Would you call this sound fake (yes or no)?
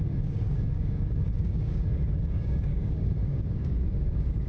yes